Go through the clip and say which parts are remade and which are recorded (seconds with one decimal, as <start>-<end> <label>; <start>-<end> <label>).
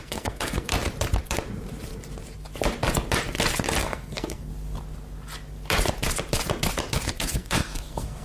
0.0-0.7 remade; 0.7-3.8 recorded; 3.8-4.5 remade; 4.5-7.1 recorded; 7.1-8.2 remade